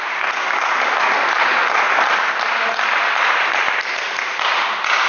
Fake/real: real